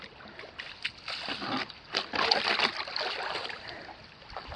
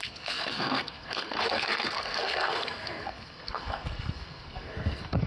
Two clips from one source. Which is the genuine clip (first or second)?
first